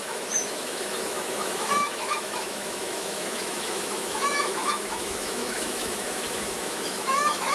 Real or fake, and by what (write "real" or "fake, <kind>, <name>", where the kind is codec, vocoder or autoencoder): fake, autoencoder, DAC-VAE